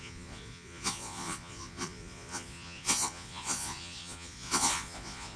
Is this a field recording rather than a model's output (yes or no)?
no